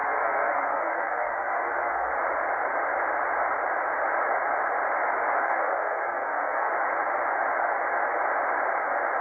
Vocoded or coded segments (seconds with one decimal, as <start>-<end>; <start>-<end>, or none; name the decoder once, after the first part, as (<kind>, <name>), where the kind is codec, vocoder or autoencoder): 0.0-2.1 (codec, SNAC); 5.4-6.7